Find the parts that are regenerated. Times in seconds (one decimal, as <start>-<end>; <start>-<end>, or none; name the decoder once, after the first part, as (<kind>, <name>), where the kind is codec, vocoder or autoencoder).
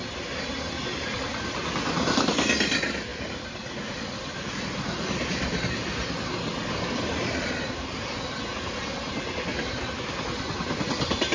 none